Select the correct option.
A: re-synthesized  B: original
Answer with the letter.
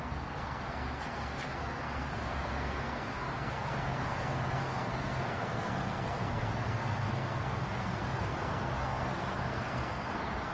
A